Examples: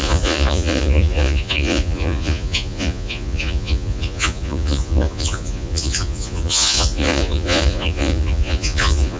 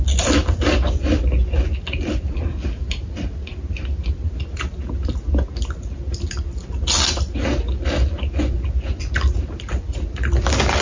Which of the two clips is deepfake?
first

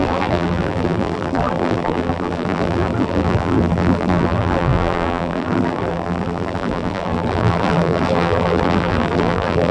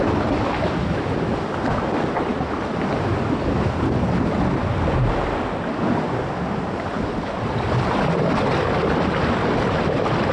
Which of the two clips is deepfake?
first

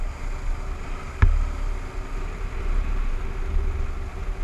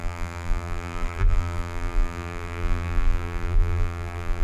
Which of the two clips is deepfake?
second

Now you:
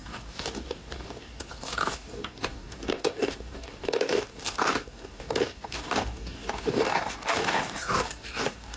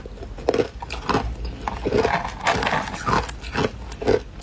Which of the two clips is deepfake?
first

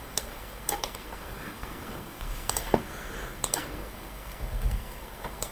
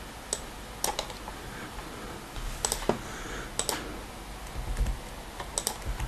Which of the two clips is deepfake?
first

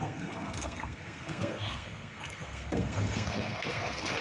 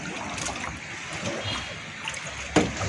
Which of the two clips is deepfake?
first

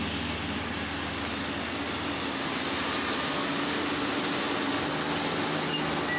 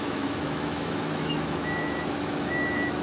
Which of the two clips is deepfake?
second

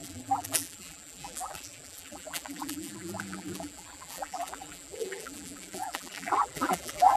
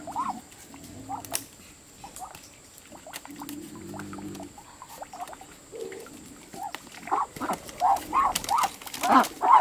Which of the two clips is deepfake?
first